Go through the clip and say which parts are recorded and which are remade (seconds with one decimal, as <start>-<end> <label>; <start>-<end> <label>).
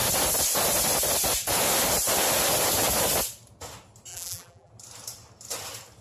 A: 0.0-4.1 recorded; 4.1-4.7 remade; 4.7-6.0 recorded